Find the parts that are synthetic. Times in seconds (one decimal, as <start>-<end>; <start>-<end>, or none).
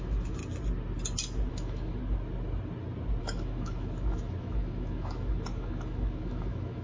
0.0-0.4; 1.5-2.0; 3.2-6.8